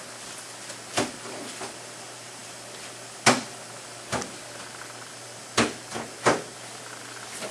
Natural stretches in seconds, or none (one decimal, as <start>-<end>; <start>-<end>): 0.0-7.5